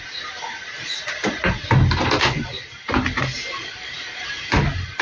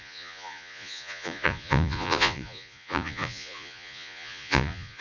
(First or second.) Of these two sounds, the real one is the first